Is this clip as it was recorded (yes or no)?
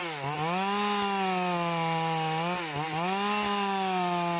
yes